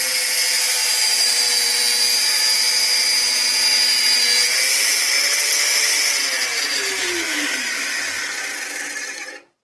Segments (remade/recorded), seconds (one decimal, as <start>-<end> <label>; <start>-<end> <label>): 0.0-0.8 recorded; 0.8-1.8 remade; 1.8-6.6 recorded; 6.6-8.2 remade; 8.2-9.6 recorded